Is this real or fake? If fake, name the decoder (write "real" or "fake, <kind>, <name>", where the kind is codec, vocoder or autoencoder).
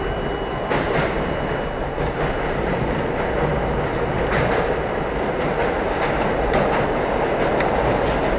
real